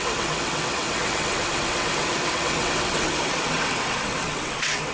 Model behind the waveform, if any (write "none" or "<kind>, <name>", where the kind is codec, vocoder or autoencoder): vocoder, WaveNeXt